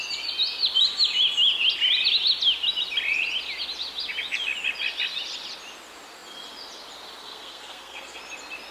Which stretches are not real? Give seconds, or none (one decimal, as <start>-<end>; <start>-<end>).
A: 7.2-8.2